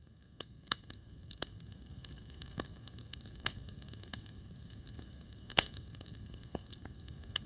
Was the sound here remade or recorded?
remade